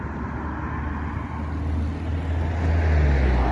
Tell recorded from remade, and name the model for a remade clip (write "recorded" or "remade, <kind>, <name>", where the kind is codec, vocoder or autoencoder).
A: recorded